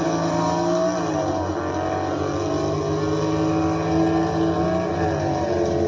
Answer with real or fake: real